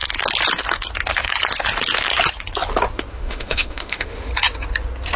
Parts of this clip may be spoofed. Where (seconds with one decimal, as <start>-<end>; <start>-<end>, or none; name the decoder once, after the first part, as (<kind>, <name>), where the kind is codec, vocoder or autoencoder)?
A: 3.1-4.3 (autoencoder, DAC-VAE)